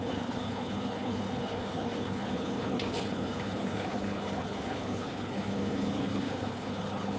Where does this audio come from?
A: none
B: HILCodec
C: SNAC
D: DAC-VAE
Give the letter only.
B